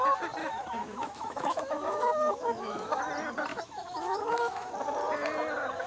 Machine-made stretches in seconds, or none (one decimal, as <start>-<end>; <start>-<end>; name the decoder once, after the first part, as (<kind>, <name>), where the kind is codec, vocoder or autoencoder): 0.4-3.0 (autoencoder, DAC-VAE); 3.5-4.7